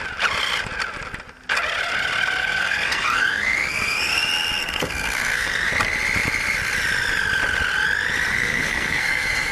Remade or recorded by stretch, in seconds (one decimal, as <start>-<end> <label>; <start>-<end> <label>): 0.0-2.4 recorded; 2.4-4.1 remade; 4.1-4.6 recorded; 4.6-5.7 remade; 5.7-8.3 recorded; 8.3-9.5 remade